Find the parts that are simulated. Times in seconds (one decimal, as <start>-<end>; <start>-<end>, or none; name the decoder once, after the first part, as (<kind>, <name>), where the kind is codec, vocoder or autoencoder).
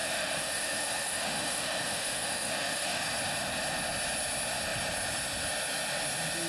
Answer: 0.0-3.0 (autoencoder, DAC-VAE)